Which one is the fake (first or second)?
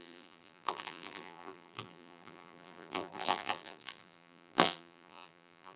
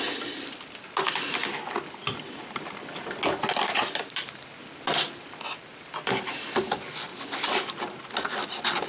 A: first